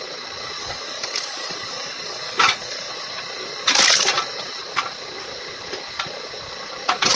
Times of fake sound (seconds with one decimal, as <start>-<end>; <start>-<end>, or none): 0.6-2.9